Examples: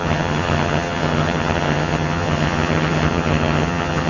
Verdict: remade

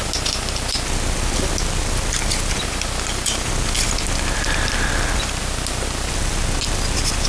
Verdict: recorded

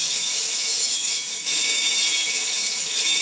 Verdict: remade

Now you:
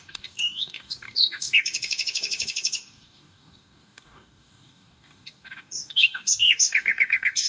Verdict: remade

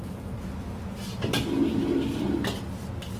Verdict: recorded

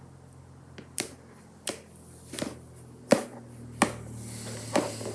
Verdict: recorded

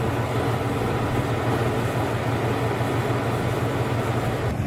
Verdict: recorded